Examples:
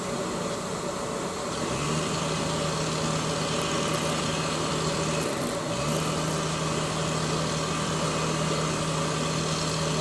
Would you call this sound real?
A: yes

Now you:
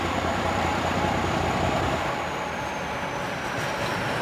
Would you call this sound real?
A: yes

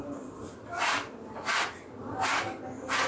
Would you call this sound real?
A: yes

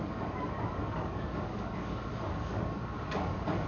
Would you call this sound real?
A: no